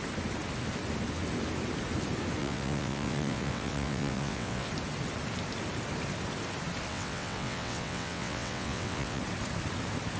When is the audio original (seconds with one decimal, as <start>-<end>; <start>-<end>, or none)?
0.0-2.4; 4.7-6.9; 9.2-10.2